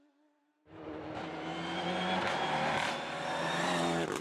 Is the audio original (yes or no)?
yes